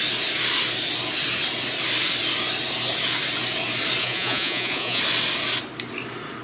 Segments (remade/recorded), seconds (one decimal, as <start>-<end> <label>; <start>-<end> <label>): 0.0-4.0 recorded; 4.0-5.0 remade; 5.0-6.4 recorded

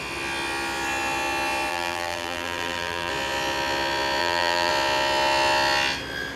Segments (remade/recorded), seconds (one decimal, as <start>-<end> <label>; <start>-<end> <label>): 0.0-1.7 recorded; 1.7-3.1 remade; 3.1-4.2 recorded; 4.2-4.7 remade; 4.7-6.4 recorded

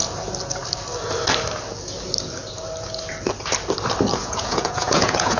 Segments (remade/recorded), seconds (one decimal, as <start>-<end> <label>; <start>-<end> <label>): 0.0-4.2 recorded; 4.2-5.4 remade

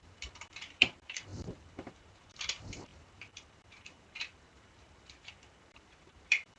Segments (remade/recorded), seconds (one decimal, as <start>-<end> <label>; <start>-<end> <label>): 0.0-6.6 remade

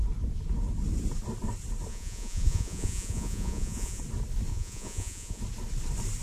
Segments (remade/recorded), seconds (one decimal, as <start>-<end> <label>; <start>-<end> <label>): 0.0-1.9 recorded; 1.9-4.0 remade; 4.0-4.5 recorded; 4.5-5.4 remade; 5.4-6.2 recorded

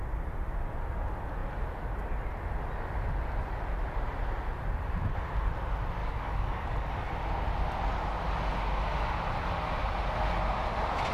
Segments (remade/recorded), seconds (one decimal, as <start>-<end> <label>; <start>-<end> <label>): 0.0-6.0 recorded; 6.0-7.1 remade; 7.1-11.1 recorded

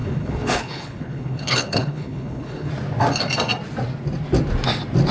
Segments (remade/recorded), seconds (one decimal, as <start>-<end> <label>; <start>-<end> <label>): 0.0-2.7 remade; 2.7-5.1 recorded

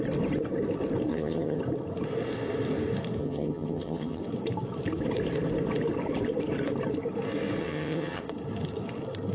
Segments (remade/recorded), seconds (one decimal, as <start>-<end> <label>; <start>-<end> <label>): 0.0-1.1 recorded; 1.1-1.6 remade; 1.6-3.2 recorded; 3.2-4.2 remade; 4.2-7.6 recorded; 7.6-8.2 remade; 8.2-9.3 recorded